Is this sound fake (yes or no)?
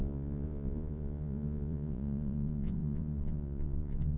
yes